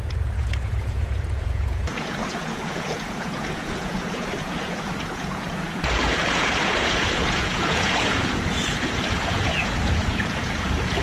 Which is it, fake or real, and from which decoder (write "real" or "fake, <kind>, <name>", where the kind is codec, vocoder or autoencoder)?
fake, vocoder, Vocos